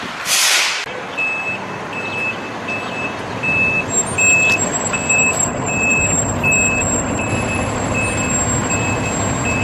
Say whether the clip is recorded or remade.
recorded